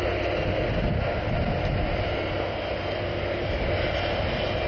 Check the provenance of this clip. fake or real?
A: real